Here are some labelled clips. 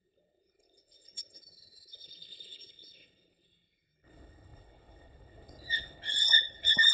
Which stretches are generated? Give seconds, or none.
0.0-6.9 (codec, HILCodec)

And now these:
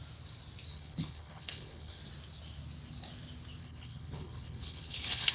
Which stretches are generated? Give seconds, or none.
0.7-2.0 (codec, HILCodec); 3.6-5.3

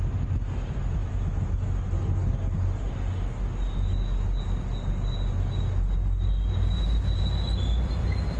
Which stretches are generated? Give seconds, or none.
none

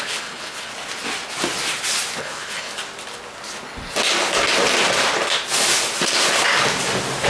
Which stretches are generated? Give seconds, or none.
0.0-0.7 (codec, HILCodec); 2.2-2.7

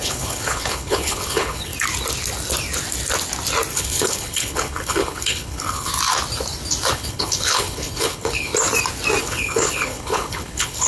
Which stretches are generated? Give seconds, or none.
0.0-1.7 (codec, HILCodec); 3.7-5.9; 6.9-8.5; 9.2-10.9

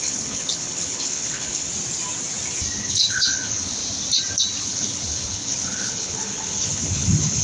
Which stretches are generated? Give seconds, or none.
0.0-1.7 (codec, HILCodec); 2.8-3.8; 4.6-7.4